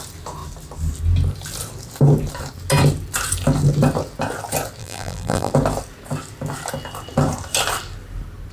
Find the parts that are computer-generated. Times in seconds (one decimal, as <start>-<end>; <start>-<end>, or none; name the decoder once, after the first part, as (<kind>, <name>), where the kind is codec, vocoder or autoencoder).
4.8-5.5 (vocoder, BigVGAN v2)